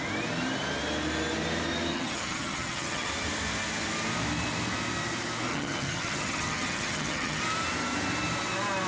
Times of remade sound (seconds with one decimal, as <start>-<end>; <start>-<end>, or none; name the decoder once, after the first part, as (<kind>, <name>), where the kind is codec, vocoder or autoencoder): 1.9-3.1 (vocoder, HiFi-GAN); 5.5-7.4